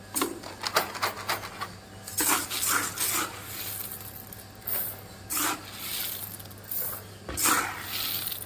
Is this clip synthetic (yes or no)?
no